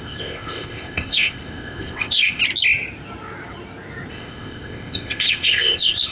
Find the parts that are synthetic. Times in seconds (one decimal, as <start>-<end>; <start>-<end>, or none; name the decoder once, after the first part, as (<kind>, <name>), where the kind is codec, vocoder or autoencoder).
0.0-2.4 (codec, ZipCodec); 4.1-6.1